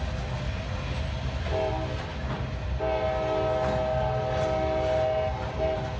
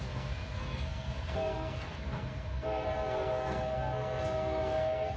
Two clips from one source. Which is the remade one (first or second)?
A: second